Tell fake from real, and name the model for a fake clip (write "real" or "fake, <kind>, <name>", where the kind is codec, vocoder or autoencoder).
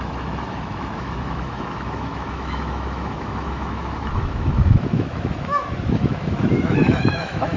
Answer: fake, autoencoder, DAC-VAE